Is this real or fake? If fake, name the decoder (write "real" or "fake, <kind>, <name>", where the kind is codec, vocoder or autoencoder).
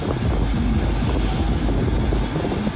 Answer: real